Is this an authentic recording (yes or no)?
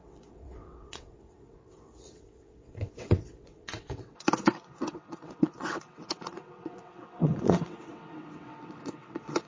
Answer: no